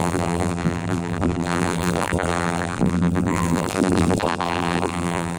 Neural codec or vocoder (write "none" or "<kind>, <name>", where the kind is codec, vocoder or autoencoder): vocoder, BigVGAN v2